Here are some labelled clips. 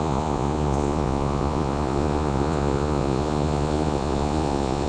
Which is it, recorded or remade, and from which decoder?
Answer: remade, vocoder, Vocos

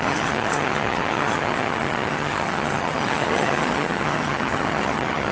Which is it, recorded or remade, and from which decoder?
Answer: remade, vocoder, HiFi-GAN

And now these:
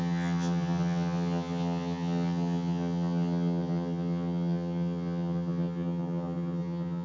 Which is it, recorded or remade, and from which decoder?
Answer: remade, vocoder, HiFi-GAN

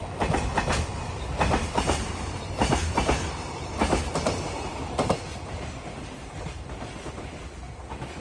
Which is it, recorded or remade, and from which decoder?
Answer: recorded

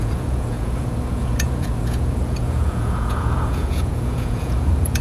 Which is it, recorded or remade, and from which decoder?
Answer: remade, vocoder, Vocos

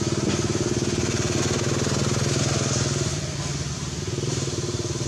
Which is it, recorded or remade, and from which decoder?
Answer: recorded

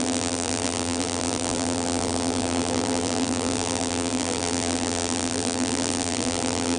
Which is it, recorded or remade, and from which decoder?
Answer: remade, vocoder, BigVGAN v2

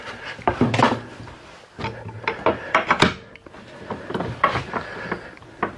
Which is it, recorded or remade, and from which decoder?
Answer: recorded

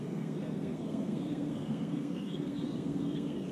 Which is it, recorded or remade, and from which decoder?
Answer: remade, codec, SNAC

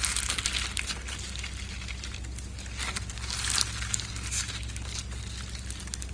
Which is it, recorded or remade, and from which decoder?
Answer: recorded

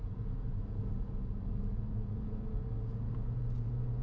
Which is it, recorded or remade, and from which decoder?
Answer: remade, vocoder, Vocos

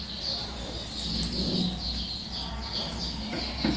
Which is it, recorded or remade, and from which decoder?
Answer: recorded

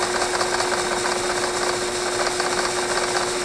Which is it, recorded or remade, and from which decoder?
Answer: recorded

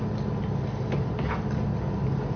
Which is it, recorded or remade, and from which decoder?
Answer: recorded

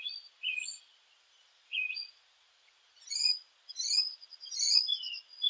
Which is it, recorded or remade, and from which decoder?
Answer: remade, vocoder, Vocos